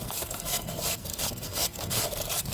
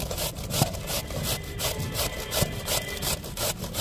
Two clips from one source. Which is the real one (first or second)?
second